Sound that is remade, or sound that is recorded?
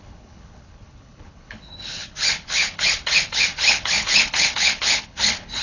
remade